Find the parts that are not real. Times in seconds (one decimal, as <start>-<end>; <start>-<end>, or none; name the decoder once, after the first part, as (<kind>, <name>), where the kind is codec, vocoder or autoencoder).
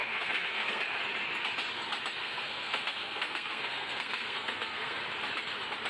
0.0-0.8 (codec, SNAC); 2.2-5.0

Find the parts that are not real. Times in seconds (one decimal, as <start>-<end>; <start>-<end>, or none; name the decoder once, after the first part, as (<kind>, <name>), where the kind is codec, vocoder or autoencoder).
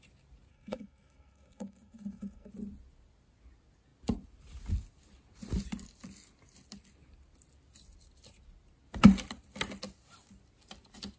0.5-2.5 (codec, SNAC)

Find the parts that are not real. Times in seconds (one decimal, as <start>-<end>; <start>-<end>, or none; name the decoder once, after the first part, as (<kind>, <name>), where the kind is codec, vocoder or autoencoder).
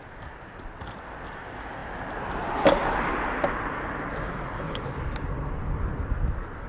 none